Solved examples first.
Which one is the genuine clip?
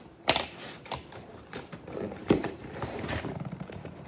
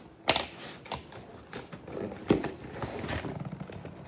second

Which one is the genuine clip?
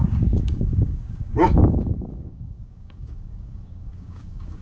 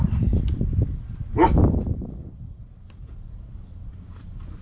second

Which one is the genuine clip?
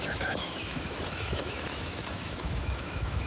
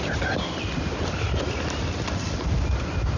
second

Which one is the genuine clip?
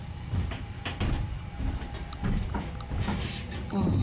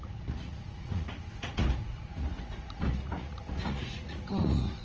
first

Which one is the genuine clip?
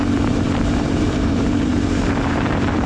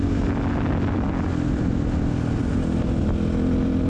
second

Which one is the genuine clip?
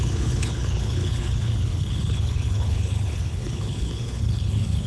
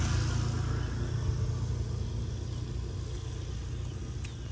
second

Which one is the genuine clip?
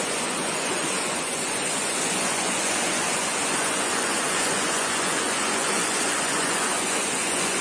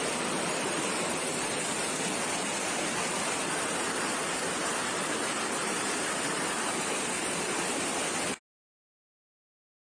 second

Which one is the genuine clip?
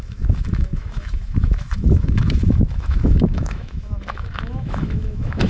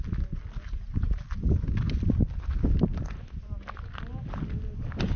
second